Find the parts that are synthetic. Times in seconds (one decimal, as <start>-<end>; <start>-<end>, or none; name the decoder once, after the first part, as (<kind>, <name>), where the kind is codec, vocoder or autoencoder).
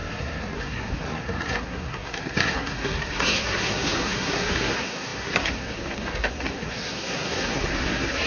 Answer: 0.0-8.3 (codec, SNAC)